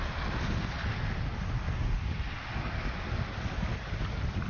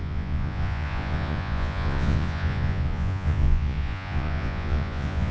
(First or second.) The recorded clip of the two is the first